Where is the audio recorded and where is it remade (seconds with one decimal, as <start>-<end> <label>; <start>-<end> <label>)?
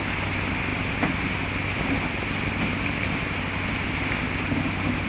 0.0-5.1 recorded